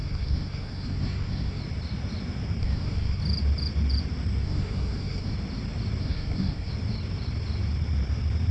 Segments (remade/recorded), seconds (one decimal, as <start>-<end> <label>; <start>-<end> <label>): 0.0-1.6 remade; 1.6-2.6 recorded; 2.6-3.2 remade; 3.2-4.4 recorded; 4.4-5.3 remade; 5.3-6.0 recorded; 6.0-6.7 remade; 6.7-8.5 recorded